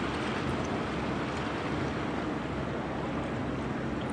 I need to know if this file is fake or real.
real